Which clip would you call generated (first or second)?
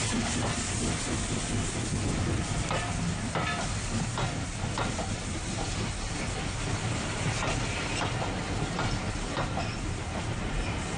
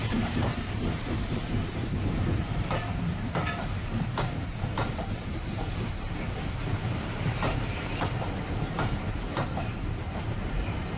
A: second